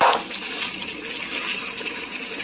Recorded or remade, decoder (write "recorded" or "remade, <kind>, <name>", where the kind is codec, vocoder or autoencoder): recorded